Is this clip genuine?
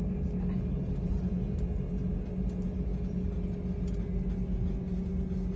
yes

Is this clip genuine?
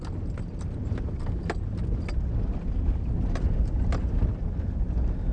yes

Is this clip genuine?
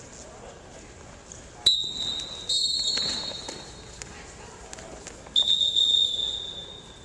yes